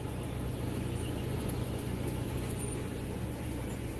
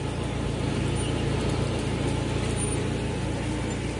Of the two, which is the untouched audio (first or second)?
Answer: second